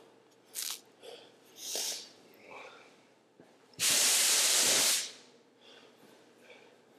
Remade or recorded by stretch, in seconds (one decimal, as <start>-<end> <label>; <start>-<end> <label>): 0.0-1.6 recorded; 1.6-4.6 remade; 4.6-7.0 recorded